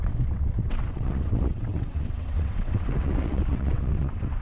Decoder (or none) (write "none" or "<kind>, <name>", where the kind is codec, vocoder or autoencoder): vocoder, WaveNeXt